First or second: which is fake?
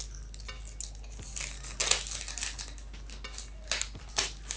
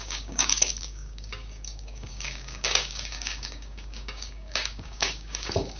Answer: second